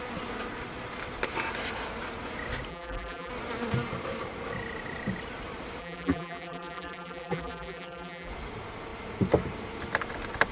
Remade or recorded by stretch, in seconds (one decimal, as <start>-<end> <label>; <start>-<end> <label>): 0.0-2.7 recorded; 2.7-3.3 remade; 3.3-5.8 recorded; 5.8-8.3 remade; 8.3-10.5 recorded